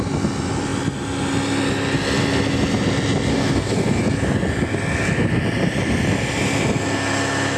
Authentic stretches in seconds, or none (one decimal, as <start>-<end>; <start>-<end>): 0.0-3.3; 4.0-7.6